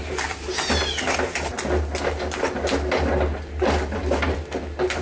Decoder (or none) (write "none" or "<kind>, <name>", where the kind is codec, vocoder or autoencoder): none